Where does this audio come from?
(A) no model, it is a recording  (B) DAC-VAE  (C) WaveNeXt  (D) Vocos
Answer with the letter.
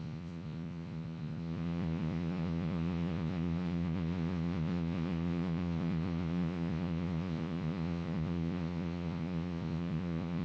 D